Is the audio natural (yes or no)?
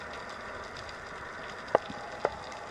yes